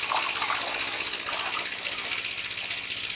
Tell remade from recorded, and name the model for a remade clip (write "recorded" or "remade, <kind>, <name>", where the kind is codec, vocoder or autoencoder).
recorded